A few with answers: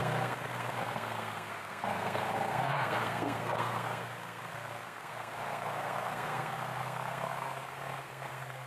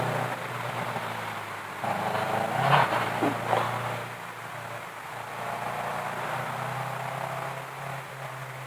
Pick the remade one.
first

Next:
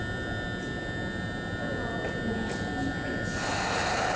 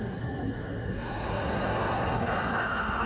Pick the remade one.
second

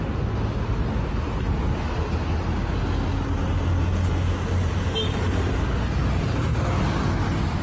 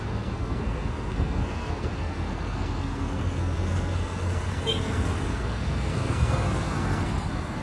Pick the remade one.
second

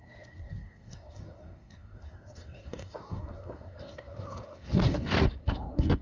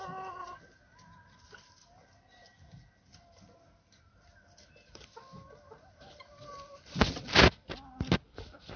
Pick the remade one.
first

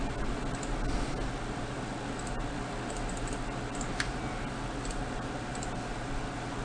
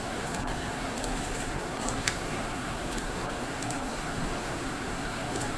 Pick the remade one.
second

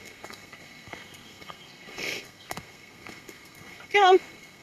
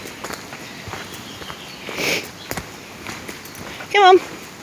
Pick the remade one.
first